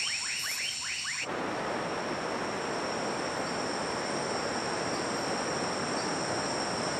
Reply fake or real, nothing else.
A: real